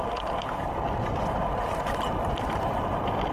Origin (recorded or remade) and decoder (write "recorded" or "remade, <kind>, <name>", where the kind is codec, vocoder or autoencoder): recorded